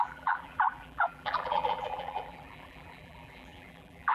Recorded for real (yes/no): no